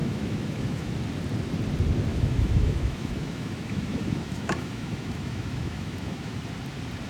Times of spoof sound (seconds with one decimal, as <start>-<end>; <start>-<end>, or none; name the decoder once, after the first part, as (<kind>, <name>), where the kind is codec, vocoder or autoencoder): 0.0-0.9 (autoencoder, DAC-VAE); 2.1-6.4